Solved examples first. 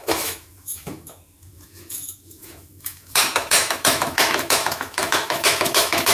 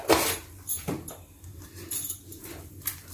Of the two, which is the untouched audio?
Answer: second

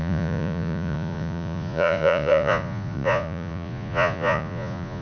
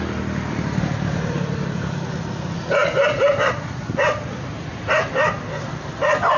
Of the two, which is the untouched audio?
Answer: second